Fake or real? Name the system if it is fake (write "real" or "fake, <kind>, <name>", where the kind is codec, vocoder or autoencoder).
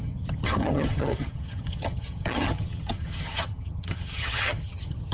fake, vocoder, HiFi-GAN